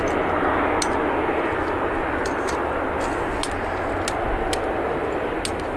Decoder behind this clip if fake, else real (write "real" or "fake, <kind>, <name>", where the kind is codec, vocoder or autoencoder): real